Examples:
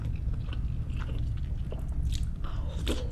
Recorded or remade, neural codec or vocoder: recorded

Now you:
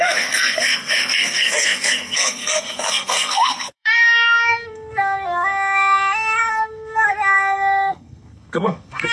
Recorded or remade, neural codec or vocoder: remade, codec, SNAC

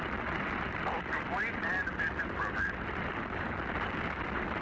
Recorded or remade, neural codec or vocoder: recorded